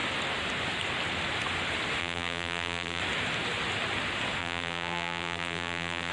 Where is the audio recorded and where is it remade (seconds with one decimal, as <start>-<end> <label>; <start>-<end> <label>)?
0.0-2.0 recorded; 2.0-3.0 remade; 3.0-4.4 recorded; 4.4-6.1 remade